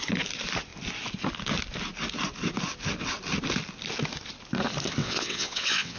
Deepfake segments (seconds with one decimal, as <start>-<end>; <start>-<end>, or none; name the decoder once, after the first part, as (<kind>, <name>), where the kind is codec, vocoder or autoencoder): 5.0-6.0 (vocoder, WaveNeXt)

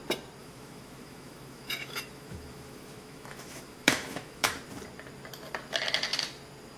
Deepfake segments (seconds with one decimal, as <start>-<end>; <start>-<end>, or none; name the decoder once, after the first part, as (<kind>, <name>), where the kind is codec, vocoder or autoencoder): 0.4-4.5 (autoencoder, DAC-VAE)

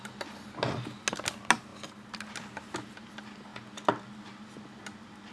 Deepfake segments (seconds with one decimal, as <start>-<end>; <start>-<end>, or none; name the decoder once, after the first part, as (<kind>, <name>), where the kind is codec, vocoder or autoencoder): none

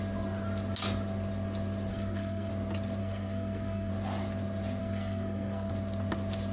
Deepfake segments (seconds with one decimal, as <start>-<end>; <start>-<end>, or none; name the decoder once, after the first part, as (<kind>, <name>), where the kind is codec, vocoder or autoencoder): 1.9-2.5 (codec, SNAC); 3.0-3.9; 4.8-5.7

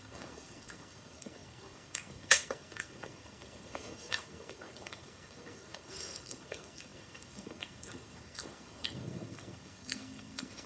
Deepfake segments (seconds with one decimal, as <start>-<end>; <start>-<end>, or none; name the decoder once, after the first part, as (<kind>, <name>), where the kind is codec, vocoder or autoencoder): 0.0-10.7 (codec, SNAC)

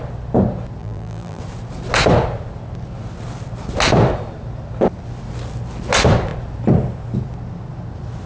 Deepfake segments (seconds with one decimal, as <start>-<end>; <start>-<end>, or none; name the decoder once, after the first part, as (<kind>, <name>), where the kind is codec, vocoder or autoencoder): 0.8-1.4 (vocoder, BigVGAN v2)

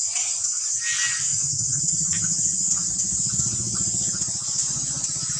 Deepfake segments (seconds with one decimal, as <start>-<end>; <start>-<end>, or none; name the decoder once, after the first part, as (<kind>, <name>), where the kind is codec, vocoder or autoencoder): 1.3-1.8 (autoencoder, DAC-VAE)

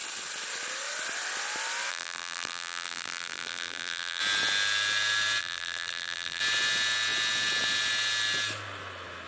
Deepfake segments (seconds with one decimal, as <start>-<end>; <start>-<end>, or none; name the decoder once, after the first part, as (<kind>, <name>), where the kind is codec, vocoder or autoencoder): 1.9-4.2 (vocoder, BigVGAN v2); 5.4-6.4